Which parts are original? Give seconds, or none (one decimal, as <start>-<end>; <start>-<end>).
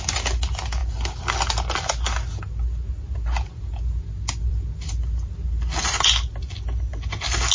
0.0-7.5